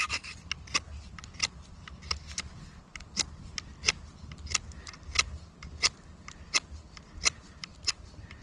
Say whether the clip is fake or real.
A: real